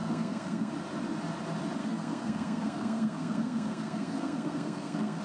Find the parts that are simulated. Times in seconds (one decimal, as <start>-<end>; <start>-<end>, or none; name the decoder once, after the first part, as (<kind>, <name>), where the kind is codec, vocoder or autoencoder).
0.0-0.7 (codec, SNAC); 1.8-5.2